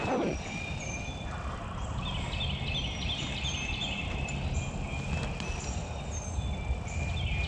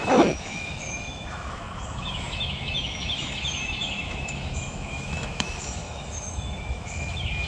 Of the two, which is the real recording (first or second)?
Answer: first